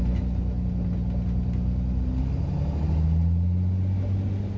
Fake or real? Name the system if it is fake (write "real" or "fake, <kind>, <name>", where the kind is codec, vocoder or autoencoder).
real